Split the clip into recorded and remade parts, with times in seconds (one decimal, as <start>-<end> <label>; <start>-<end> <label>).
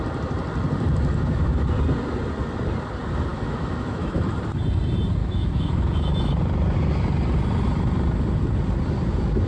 0.0-1.1 recorded; 1.1-1.7 remade; 1.7-3.3 recorded; 3.3-4.2 remade; 4.2-5.2 recorded; 5.2-6.4 remade; 6.4-9.5 recorded